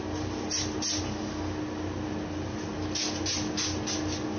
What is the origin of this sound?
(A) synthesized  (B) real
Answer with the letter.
B